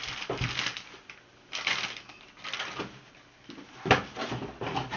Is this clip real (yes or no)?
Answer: yes